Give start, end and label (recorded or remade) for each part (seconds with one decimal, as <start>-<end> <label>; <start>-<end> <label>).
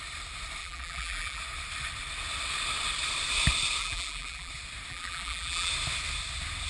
0.0-0.6 recorded; 0.6-1.4 remade; 1.4-3.8 recorded; 3.8-4.5 remade; 4.5-4.9 recorded; 4.9-5.7 remade; 5.7-6.7 recorded